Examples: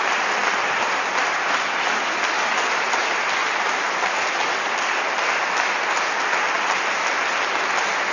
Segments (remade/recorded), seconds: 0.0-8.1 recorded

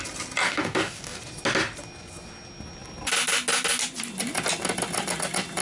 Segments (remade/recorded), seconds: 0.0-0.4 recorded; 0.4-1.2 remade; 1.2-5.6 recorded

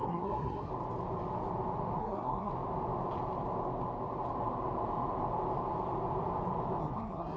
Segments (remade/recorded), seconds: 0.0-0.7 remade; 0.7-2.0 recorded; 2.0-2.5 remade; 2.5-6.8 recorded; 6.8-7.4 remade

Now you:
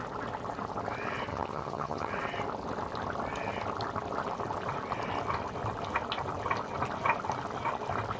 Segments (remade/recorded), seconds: 0.0-1.3 recorded; 1.3-2.1 remade; 2.1-8.2 recorded